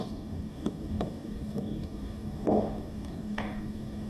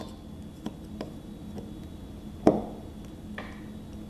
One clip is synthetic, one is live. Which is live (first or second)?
second